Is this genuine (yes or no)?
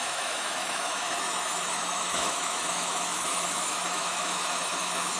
no